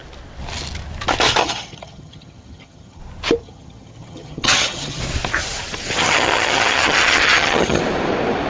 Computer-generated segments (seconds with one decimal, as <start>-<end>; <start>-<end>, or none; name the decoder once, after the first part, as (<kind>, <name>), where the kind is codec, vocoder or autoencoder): 1.4-3.0 (vocoder, HiFi-GAN); 3.4-5.0; 6.0-7.8